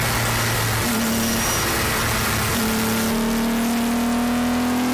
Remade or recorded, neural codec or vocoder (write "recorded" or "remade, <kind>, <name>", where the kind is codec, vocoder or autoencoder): recorded